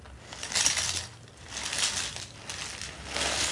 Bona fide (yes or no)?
yes